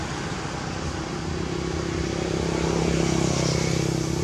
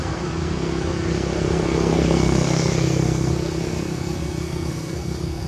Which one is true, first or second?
first